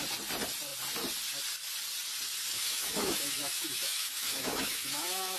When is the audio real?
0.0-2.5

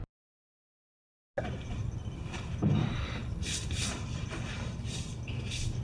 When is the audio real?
0.0-5.8

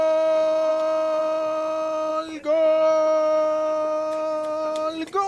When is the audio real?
0.0-5.3

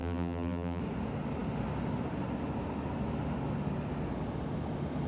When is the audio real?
0.8-5.1